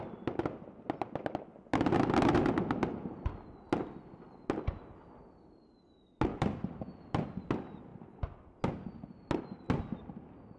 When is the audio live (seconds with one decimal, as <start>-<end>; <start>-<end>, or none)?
0.0-6.3; 7.4-10.6